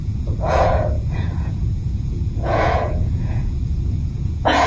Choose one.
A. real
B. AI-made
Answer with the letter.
B